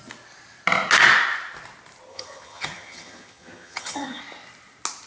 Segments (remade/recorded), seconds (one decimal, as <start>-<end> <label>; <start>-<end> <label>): 0.0-2.1 recorded; 2.1-4.2 remade; 4.2-5.1 recorded